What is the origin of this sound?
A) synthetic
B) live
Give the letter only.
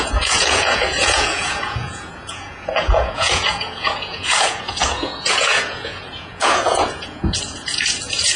A